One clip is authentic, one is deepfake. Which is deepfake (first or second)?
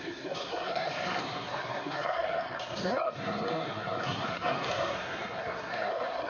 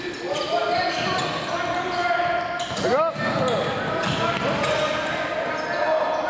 first